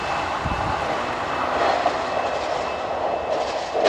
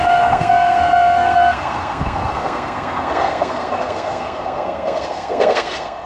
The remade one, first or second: second